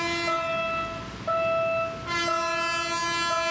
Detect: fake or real real